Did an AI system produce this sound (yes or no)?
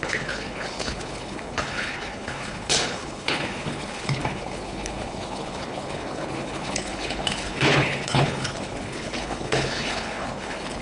yes